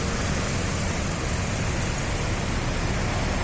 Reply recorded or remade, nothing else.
recorded